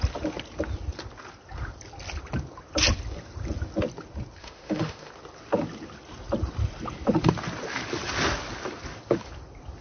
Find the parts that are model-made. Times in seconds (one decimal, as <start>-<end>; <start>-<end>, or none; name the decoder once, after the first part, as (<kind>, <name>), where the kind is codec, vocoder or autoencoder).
4.4-5.1 (autoencoder, DAC-VAE)